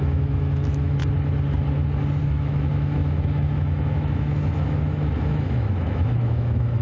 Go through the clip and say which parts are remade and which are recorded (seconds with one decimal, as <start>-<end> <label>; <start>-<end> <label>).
0.0-1.0 remade; 1.0-2.2 recorded; 2.2-6.8 remade